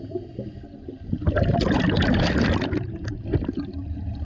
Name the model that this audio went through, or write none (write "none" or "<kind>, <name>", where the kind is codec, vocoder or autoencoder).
none